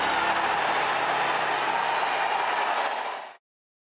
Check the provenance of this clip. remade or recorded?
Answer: recorded